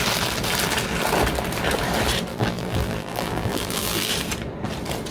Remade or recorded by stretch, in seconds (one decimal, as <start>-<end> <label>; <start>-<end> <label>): 0.0-2.3 recorded; 2.3-4.1 remade; 4.1-5.1 recorded